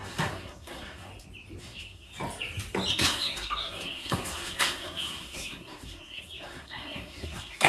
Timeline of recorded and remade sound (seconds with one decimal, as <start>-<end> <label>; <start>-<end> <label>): 0.0-1.1 remade; 1.1-1.6 recorded; 1.6-2.1 remade; 2.1-2.9 recorded; 2.9-7.7 remade